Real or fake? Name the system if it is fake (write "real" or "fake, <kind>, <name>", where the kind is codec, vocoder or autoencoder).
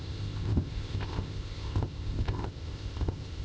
fake, codec, ZipCodec